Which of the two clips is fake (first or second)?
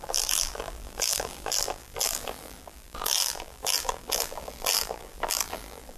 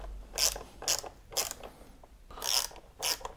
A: first